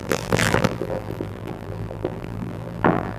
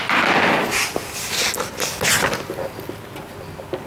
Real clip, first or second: second